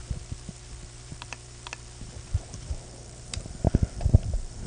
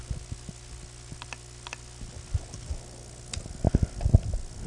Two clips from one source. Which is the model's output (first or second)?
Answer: first